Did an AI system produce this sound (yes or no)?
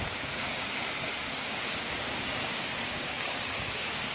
yes